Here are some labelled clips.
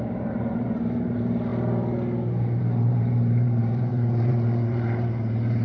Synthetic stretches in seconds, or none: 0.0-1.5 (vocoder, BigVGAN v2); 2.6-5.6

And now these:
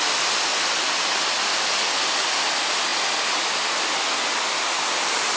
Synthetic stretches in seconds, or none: none

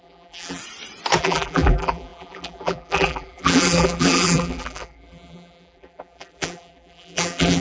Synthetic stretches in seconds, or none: 0.0-0.6 (vocoder, BigVGAN v2); 1.2-7.6

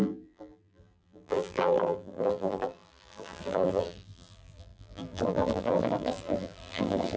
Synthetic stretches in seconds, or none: 0.0-7.2 (vocoder, BigVGAN v2)

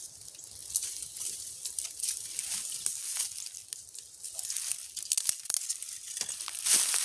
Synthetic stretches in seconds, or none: 0.6-3.2 (vocoder, BigVGAN v2)

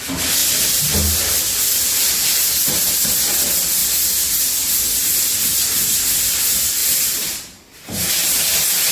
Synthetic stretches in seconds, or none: 6.8-8.1 (vocoder, BigVGAN v2)

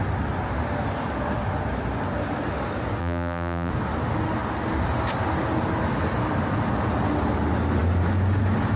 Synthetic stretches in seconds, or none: 3.0-3.7 (vocoder, BigVGAN v2)

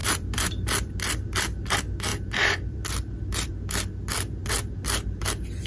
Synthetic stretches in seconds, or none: 0.0-0.7 (vocoder, BigVGAN v2); 2.1-2.8